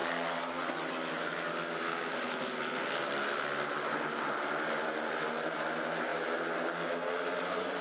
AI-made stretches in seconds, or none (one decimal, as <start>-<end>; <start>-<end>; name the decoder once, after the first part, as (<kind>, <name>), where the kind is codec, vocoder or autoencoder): 4.2-6.1 (vocoder, BigVGAN v2); 7.2-7.8